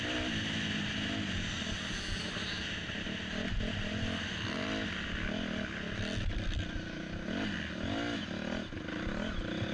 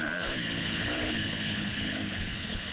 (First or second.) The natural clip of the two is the first